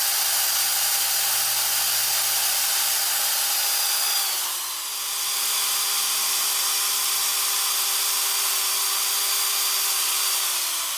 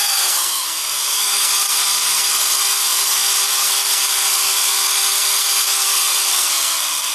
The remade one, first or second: second